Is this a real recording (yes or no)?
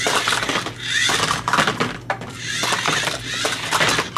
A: yes